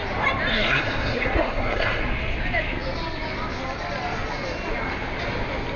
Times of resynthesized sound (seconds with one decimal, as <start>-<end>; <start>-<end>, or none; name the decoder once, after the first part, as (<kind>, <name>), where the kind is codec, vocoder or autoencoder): 0.5-2.0 (codec, SNAC)